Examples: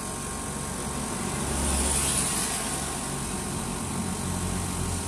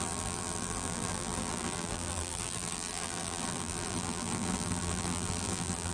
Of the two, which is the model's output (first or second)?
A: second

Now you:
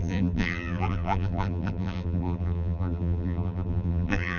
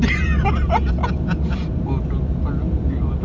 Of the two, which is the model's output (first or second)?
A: first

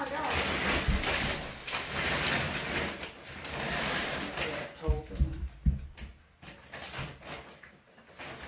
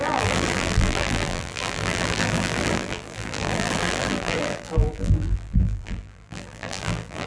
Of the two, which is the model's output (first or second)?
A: second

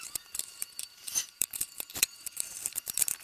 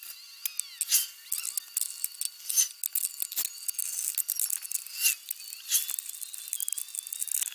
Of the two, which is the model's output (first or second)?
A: first